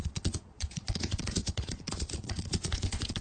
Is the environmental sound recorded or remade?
remade